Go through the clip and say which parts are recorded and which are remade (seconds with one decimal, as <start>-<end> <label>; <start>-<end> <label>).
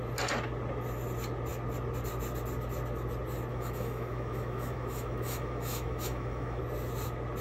0.0-3.5 recorded; 3.5-6.6 remade; 6.6-7.4 recorded